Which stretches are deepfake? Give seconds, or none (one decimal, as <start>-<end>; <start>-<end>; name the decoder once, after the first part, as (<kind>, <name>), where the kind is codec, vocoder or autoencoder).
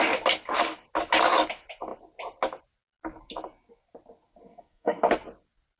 4.5-5.0 (codec, SNAC)